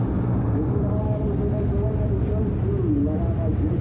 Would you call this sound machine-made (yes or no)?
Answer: no